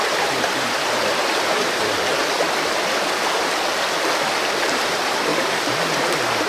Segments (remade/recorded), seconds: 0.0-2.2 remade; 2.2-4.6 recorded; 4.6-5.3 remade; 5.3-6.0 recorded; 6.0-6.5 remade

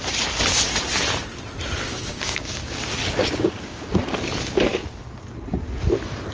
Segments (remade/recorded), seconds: 0.0-1.9 recorded; 1.9-2.8 remade; 2.8-3.2 recorded; 3.2-3.9 remade; 3.9-6.3 recorded

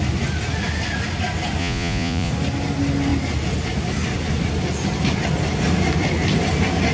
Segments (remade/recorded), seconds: 0.0-1.6 recorded; 1.6-2.3 remade; 2.3-6.9 recorded

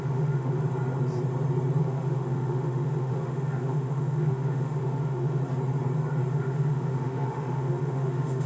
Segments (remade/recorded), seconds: 0.0-0.6 remade; 0.6-1.8 recorded; 1.8-5.4 remade; 5.4-6.3 recorded; 6.3-8.5 remade

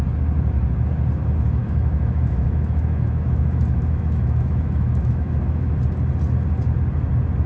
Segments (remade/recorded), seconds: 0.0-1.6 recorded; 1.6-5.7 remade; 5.7-7.5 recorded

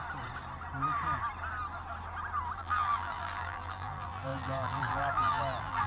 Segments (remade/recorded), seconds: 0.0-2.6 recorded; 2.6-5.9 remade

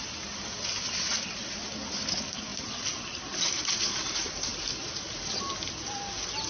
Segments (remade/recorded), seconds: 0.0-1.1 recorded; 1.1-1.7 remade; 1.7-2.5 recorded; 2.5-3.6 remade; 3.6-4.5 recorded; 4.5-5.5 remade; 5.5-6.5 recorded